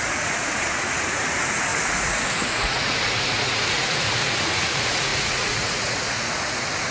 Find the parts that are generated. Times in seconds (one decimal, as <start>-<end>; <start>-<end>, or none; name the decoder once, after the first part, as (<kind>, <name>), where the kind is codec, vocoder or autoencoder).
0.0-6.9 (vocoder, Vocos)